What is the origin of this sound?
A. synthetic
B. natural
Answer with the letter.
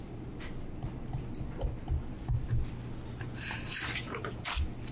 B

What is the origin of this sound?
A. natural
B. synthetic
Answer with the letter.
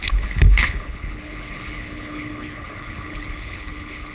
B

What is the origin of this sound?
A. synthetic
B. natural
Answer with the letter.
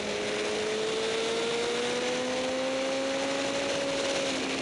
B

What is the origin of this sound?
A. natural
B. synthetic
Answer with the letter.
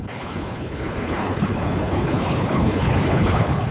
B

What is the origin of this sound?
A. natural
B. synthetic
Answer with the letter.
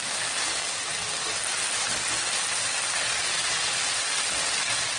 A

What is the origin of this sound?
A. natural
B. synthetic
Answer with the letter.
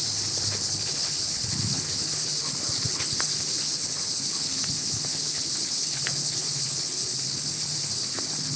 B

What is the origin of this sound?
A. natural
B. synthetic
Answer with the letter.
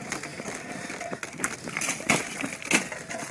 A